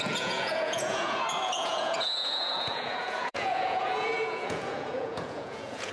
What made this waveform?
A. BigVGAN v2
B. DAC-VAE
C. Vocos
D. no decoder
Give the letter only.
C